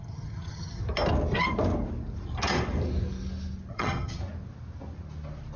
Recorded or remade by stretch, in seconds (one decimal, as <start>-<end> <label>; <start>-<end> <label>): 0.0-0.8 remade; 0.8-3.7 recorded; 3.7-4.2 remade; 4.2-5.6 recorded